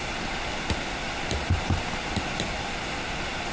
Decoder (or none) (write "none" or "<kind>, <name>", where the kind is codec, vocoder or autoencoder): none